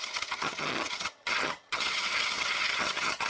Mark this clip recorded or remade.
remade